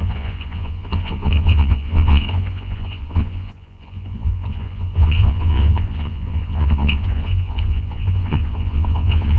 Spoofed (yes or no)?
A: yes